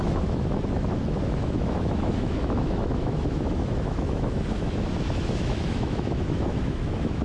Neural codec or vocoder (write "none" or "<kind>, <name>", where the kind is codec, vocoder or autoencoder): autoencoder, DAC-VAE